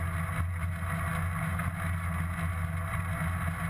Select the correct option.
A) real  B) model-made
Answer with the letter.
A